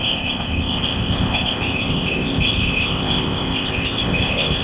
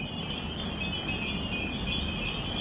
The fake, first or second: first